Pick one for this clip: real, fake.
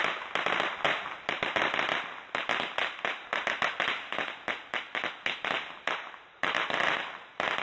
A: real